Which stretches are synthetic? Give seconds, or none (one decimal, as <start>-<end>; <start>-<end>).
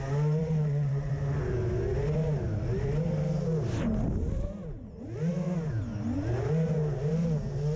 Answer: 0.4-1.1